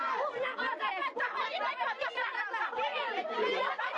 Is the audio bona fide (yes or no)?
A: yes